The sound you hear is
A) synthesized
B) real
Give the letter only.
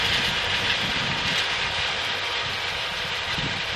A